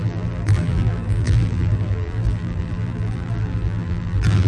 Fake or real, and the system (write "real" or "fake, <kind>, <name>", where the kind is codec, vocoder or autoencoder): fake, vocoder, BigVGAN v2